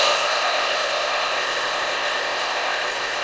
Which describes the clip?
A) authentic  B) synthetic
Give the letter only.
B